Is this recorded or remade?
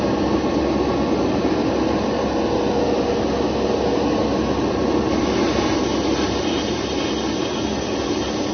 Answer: recorded